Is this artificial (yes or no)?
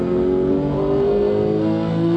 yes